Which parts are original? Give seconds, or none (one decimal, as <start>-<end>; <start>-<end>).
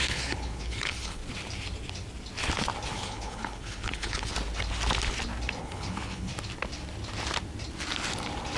1.2-2.9; 4.3-5.6; 6.3-8.6